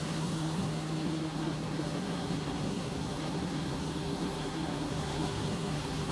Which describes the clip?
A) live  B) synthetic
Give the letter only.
B